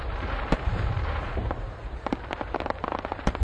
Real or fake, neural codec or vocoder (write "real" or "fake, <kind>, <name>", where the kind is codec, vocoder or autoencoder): fake, vocoder, BigVGAN v2